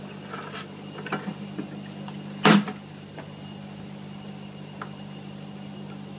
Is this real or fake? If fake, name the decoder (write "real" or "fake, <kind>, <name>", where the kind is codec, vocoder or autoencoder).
real